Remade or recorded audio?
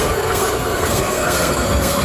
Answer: remade